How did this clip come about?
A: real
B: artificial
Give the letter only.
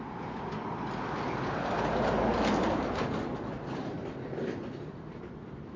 A